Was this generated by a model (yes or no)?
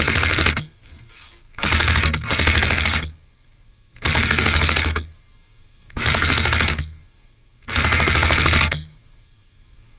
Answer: yes